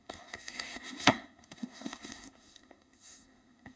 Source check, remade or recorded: remade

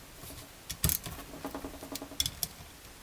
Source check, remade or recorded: recorded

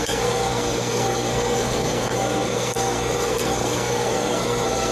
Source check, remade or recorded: remade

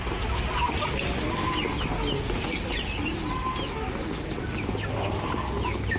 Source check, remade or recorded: recorded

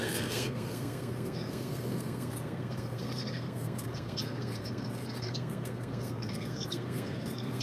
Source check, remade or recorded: remade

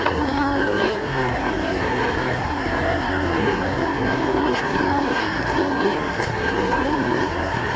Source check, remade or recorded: remade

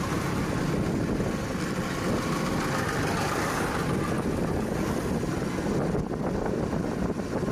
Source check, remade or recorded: recorded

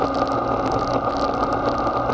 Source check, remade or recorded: recorded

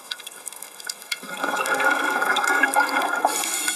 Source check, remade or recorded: remade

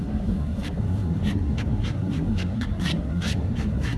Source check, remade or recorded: remade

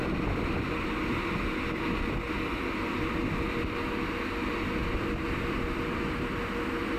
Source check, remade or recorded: recorded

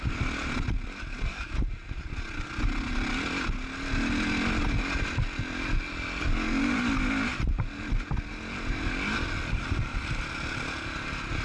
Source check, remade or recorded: recorded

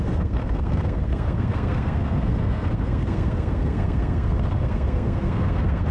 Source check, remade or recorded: remade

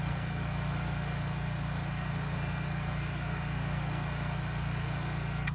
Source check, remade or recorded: remade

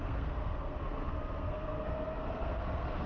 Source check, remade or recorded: remade